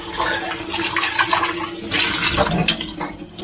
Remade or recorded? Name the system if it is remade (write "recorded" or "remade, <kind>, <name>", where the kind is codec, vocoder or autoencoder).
recorded